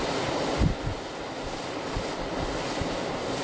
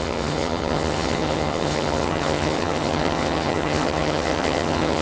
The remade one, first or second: second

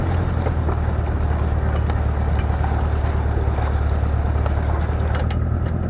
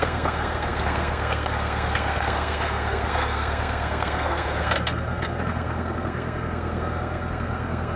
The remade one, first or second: second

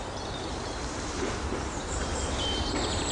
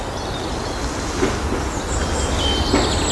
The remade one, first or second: first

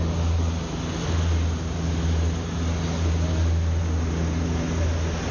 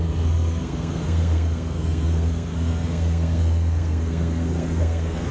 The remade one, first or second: second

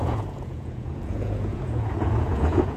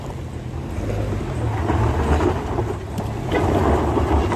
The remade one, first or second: first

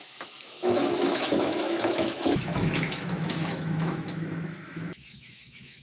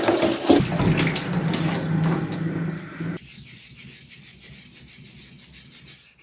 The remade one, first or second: first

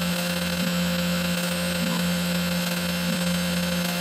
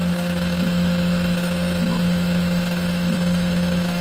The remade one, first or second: second